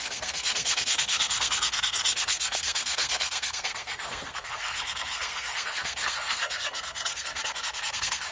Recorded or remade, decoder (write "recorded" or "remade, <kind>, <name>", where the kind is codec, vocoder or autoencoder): remade, codec, SNAC